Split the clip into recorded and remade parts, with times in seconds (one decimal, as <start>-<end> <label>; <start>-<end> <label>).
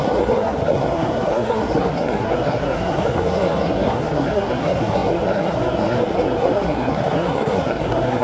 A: 0.0-8.2 remade